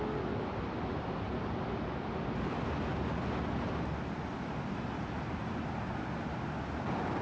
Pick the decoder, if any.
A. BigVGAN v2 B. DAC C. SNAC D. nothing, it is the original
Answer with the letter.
D